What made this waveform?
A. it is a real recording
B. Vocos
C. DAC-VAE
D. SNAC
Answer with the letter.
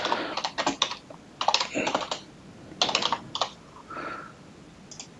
A